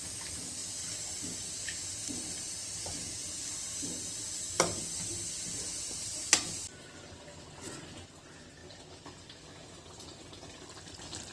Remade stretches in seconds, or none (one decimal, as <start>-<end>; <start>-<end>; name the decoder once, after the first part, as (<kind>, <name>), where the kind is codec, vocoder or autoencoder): none